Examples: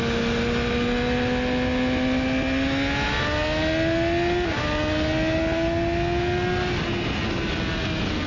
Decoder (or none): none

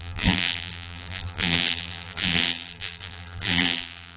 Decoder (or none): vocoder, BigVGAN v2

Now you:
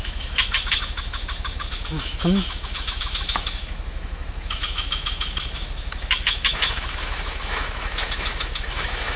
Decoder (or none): autoencoder, DAC-VAE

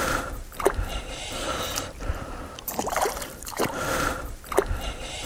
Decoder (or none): vocoder, BigVGAN v2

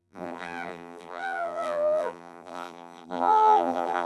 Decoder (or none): vocoder, BigVGAN v2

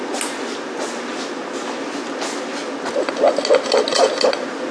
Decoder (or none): none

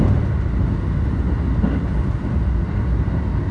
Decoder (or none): none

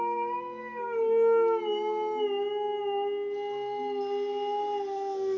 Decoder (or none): none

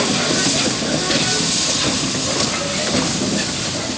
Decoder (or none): none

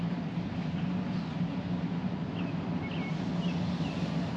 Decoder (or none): none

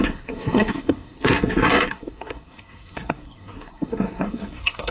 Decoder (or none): codec, SNAC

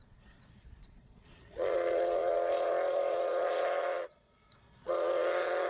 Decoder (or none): vocoder, Vocos